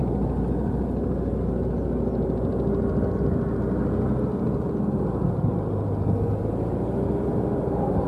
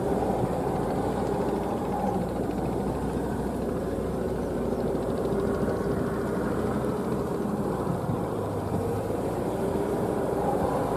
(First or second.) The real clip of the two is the first